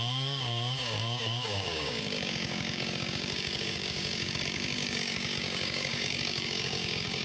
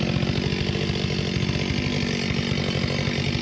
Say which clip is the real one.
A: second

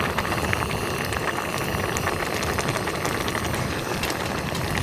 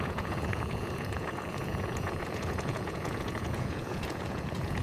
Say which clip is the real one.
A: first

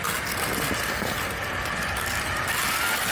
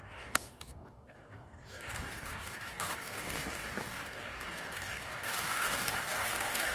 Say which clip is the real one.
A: first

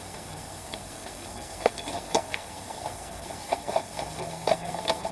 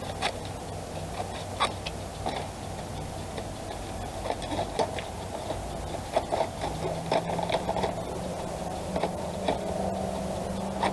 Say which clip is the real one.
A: second